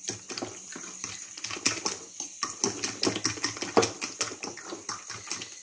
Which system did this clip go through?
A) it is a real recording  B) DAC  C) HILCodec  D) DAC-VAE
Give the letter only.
A